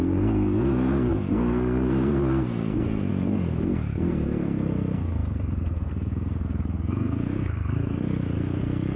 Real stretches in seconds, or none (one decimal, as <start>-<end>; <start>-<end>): none